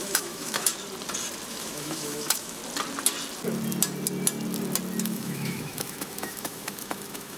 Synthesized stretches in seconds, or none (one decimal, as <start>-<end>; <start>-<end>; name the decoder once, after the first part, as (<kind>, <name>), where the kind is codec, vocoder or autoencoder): 0.0-0.7 (autoencoder, DAC-VAE); 1.5-2.6; 5.0-7.4